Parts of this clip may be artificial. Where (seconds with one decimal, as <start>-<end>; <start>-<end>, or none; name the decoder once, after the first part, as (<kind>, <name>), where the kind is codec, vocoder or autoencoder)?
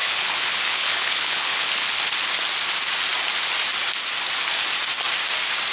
0.0-2.0 (codec, HILCodec)